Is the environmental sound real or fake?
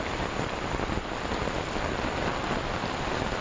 real